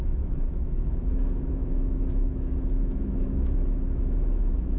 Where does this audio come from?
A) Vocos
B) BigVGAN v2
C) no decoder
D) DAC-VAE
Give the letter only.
D